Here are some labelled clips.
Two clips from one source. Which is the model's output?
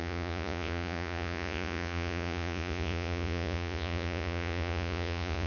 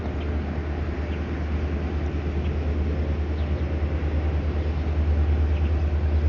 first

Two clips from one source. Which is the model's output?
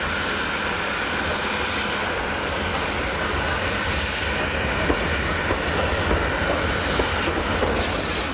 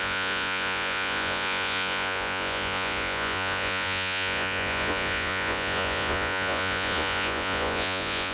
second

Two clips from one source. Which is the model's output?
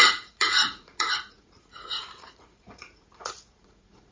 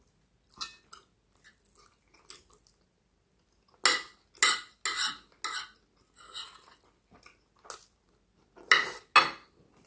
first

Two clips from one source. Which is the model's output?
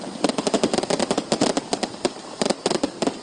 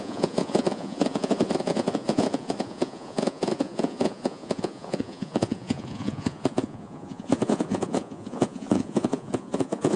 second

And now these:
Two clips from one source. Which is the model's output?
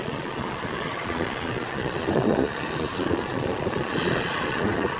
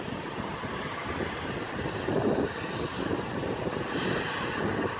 first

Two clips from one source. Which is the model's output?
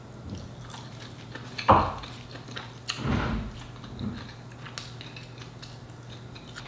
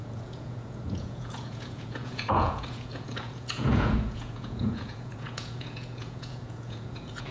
second